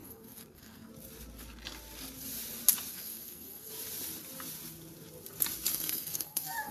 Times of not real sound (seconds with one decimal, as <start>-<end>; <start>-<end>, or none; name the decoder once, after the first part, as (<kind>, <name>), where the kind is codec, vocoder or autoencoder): 0.0-0.9 (codec, SNAC); 2.9-3.7; 5.7-6.7